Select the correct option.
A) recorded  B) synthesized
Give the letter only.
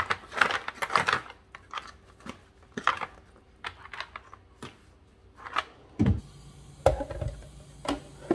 A